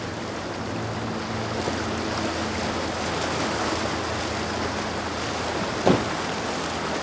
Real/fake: real